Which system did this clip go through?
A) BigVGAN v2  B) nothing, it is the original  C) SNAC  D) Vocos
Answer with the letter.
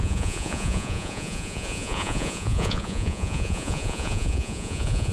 D